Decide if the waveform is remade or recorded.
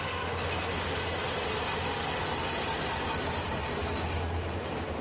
recorded